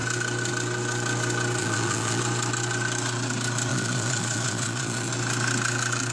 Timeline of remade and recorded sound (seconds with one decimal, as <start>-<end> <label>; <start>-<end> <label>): 0.0-1.6 recorded; 1.6-2.2 remade; 2.2-3.7 recorded; 3.7-5.1 remade; 5.1-6.1 recorded